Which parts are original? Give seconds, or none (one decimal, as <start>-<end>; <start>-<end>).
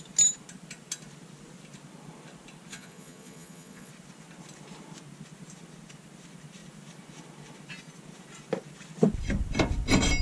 0.0-2.7; 3.9-10.2